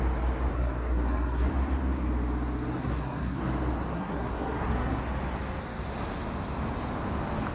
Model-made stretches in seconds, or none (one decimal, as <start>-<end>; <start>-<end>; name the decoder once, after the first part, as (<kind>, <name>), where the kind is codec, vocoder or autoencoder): 0.5-1.5 (codec, SNAC); 2.8-3.4; 3.9-5.0